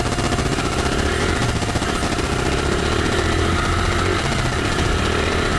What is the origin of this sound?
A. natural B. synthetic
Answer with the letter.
A